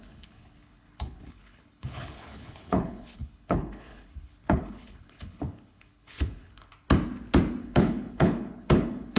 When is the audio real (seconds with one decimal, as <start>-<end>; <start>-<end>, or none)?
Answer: 6.7-7.6